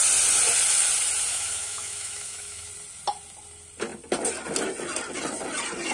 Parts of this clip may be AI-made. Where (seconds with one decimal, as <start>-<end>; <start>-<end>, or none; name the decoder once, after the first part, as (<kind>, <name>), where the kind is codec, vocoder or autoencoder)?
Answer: 1.3-2.7 (autoencoder, DAC-VAE)